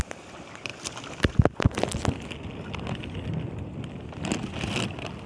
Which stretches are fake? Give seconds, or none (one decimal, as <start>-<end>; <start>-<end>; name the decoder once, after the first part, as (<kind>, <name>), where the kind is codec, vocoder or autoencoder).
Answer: none